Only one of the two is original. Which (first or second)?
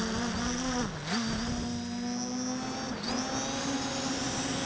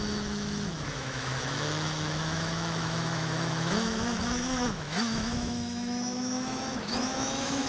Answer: first